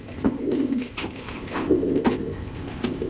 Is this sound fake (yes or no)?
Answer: yes